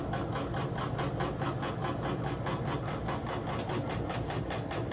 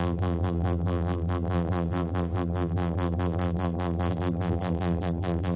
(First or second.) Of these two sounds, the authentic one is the first